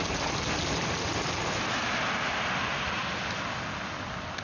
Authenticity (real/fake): real